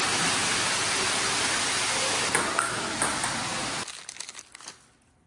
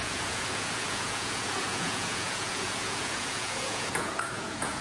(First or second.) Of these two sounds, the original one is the first